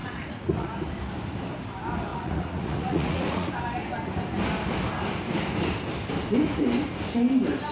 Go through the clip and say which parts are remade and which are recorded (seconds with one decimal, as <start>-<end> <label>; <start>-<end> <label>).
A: 0.0-0.7 remade; 0.7-2.1 recorded; 2.1-3.5 remade; 3.5-7.7 recorded